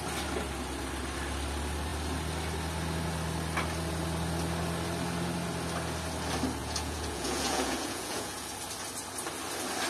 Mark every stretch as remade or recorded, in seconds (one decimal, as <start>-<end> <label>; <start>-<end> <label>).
0.0-6.6 recorded; 6.6-8.5 remade; 8.5-9.9 recorded